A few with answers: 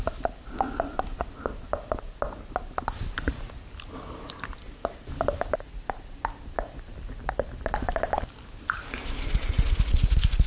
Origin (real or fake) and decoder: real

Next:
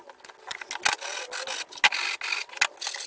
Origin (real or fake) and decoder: real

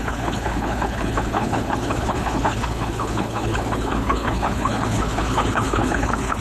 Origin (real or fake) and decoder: fake, codec, HILCodec